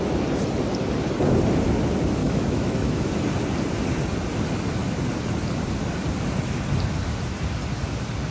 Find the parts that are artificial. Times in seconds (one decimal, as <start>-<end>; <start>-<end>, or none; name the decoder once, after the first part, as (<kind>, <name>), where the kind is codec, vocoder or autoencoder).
2.2-3.1 (autoencoder, DAC-VAE)